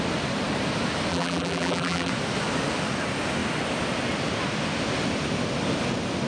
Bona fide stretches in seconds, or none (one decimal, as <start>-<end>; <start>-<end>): 0.0-1.1; 2.1-6.3